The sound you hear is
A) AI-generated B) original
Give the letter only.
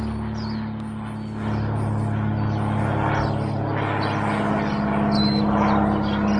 B